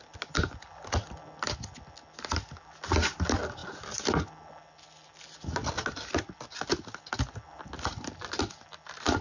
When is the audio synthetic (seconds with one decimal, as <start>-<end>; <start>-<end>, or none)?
none